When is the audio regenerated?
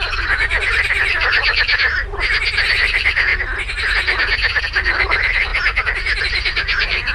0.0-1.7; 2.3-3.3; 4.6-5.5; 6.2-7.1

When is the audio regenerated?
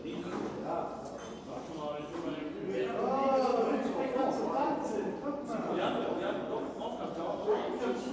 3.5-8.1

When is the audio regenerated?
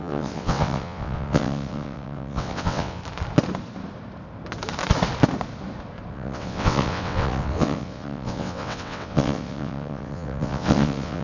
0.0-3.0; 6.1-11.2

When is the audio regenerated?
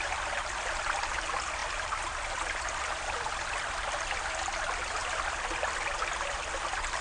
1.6-3.8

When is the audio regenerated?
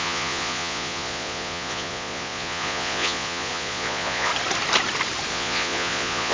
0.0-4.3; 5.3-6.3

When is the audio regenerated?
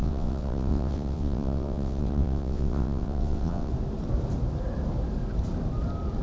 0.0-3.7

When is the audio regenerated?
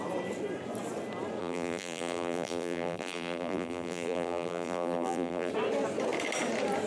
1.4-5.5